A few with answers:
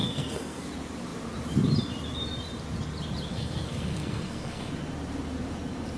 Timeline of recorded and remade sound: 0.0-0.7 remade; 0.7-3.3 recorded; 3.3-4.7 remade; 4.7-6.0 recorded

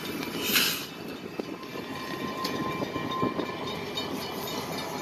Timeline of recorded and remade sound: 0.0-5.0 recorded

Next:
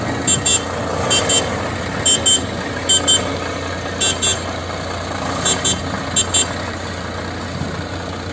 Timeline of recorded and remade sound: 0.0-8.3 recorded

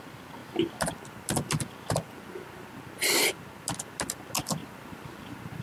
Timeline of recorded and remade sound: 0.0-5.6 recorded

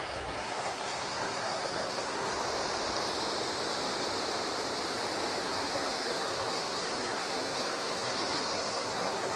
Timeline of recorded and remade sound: 0.0-2.3 remade; 2.3-5.4 recorded; 5.4-9.4 remade